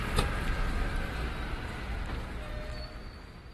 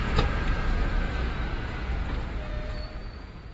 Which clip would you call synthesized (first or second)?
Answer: second